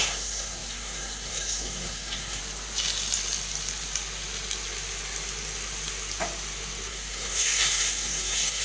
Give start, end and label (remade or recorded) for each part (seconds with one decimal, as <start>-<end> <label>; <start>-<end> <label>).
0.0-2.4 remade; 2.4-6.9 recorded; 6.9-8.6 remade

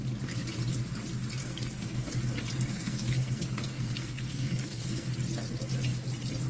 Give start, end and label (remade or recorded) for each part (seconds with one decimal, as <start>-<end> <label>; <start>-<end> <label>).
0.0-1.4 recorded; 1.4-2.2 remade; 2.2-2.7 recorded; 2.7-5.1 remade; 5.1-6.5 recorded

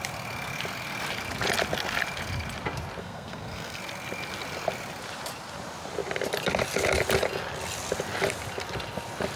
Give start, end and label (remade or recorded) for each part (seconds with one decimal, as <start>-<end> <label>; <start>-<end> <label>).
0.0-3.0 recorded; 3.0-3.8 remade; 3.8-9.4 recorded

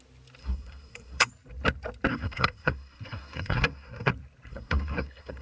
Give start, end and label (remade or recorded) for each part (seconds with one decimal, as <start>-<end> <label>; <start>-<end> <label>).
0.0-0.4 recorded; 0.4-1.3 remade; 1.3-2.1 recorded; 2.1-4.1 remade; 4.1-4.5 recorded; 4.5-5.4 remade

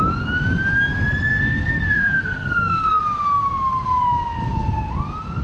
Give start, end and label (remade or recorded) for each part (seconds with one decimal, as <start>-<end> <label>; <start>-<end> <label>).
0.0-1.3 recorded; 1.3-3.0 remade; 3.0-5.4 recorded

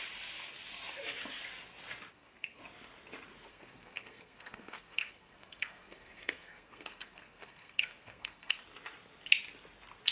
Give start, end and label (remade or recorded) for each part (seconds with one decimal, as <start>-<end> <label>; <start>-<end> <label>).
0.0-2.1 recorded; 2.1-2.6 remade; 2.6-3.5 recorded; 3.5-8.6 remade; 8.6-10.1 recorded